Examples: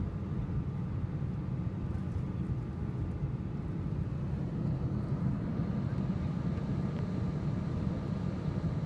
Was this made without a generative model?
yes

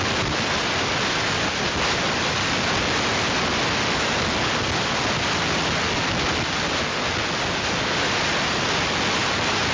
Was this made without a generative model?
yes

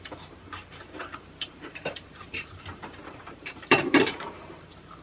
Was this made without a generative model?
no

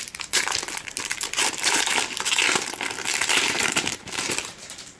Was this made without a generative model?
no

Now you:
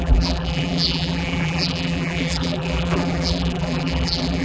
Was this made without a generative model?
no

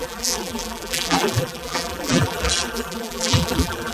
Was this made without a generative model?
no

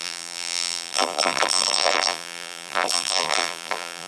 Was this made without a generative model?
no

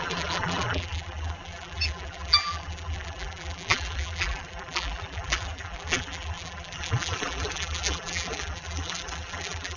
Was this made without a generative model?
no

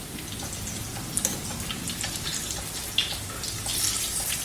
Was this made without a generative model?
yes